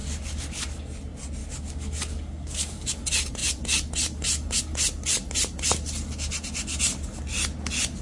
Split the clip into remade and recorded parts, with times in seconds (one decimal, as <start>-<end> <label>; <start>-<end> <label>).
0.0-0.9 remade; 0.9-1.4 recorded; 1.4-2.9 remade; 2.9-8.0 recorded